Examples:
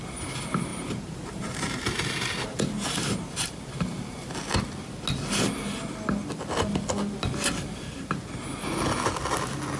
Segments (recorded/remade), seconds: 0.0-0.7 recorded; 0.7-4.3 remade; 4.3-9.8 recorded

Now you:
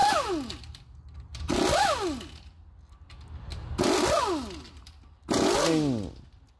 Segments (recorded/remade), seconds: 0.0-6.6 recorded

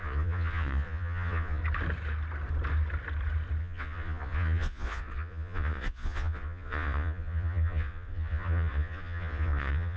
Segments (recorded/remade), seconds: 0.0-1.6 remade; 1.6-3.6 recorded; 3.6-10.0 remade

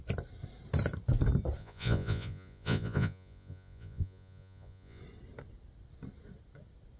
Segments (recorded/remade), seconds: 0.0-1.6 recorded; 1.6-5.0 remade; 5.0-7.0 recorded

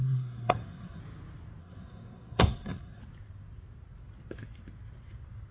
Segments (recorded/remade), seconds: 0.0-1.0 remade; 1.0-1.6 recorded; 1.6-3.0 remade; 3.0-5.5 recorded

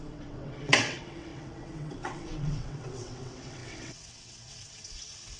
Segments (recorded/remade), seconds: 0.0-5.4 remade